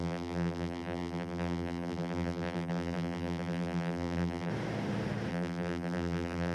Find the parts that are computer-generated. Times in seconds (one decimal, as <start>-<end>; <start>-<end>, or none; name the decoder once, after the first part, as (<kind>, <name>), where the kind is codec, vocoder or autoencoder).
0.0-4.5 (vocoder, BigVGAN v2); 5.3-6.5